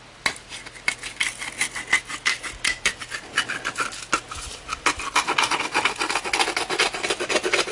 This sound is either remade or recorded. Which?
recorded